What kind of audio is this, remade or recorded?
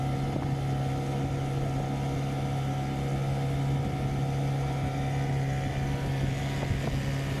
recorded